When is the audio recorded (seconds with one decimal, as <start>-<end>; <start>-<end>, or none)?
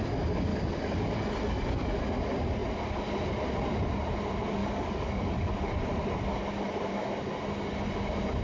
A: 0.0-0.5; 1.2-4.6; 5.8-8.4